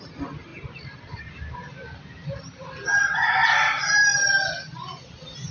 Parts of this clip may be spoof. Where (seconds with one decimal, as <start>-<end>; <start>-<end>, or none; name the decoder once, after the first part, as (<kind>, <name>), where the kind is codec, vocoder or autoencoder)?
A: none